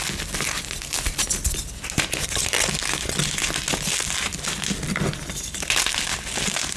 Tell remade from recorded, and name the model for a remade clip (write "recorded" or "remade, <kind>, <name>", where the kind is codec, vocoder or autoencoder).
recorded